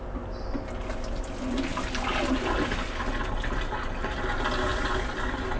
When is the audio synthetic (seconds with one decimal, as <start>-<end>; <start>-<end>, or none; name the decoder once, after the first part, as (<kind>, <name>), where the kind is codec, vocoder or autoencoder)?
none